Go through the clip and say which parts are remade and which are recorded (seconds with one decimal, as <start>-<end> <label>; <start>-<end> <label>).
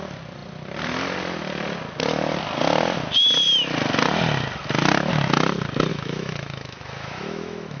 0.0-5.9 recorded; 5.9-7.8 remade